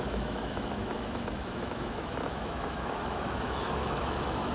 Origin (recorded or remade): remade